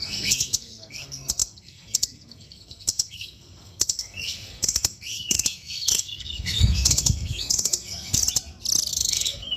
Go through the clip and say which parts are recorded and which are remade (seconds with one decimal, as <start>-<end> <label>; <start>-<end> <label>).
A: 0.0-8.2 remade; 8.2-8.9 recorded; 8.9-9.6 remade

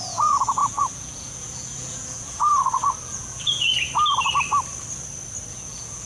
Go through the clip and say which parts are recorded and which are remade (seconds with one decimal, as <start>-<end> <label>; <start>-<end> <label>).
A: 0.0-2.5 remade; 2.5-3.0 recorded; 3.0-3.7 remade; 3.7-5.5 recorded; 5.5-6.1 remade

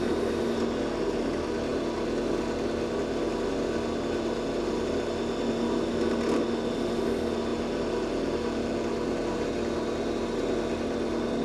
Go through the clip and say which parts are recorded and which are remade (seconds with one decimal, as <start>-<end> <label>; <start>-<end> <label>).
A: 0.0-11.4 recorded

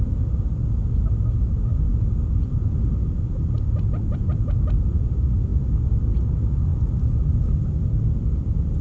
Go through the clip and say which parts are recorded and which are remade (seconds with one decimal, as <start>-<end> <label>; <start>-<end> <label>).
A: 0.0-8.8 recorded

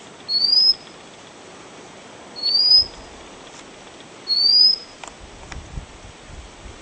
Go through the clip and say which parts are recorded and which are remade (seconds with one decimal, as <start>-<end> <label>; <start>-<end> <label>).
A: 0.0-6.8 recorded